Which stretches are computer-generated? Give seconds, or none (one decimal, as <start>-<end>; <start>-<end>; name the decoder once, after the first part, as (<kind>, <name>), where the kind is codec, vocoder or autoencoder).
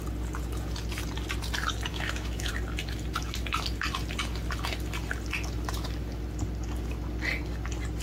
1.9-2.5 (autoencoder, DAC-VAE)